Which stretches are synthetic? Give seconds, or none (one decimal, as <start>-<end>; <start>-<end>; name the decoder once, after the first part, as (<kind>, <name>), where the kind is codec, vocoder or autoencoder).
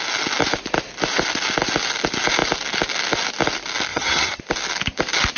3.9-4.4 (vocoder, HiFi-GAN)